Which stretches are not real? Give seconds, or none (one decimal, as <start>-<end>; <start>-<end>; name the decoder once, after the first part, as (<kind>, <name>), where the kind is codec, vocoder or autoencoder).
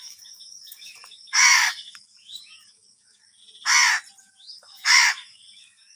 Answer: 0.0-3.4 (codec, DAC); 4.2-6.0